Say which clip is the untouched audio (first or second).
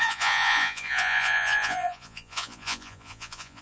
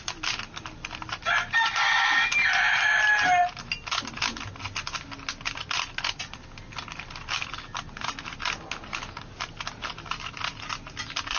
second